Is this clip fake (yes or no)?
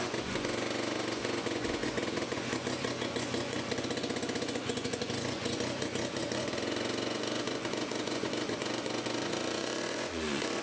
yes